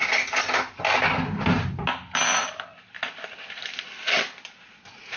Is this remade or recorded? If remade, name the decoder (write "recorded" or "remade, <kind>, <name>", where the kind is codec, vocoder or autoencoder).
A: recorded